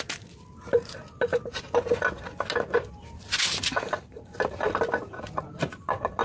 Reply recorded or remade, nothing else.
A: recorded